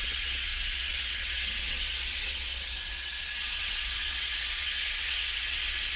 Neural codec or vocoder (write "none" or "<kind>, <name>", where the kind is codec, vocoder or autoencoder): vocoder, WaveNeXt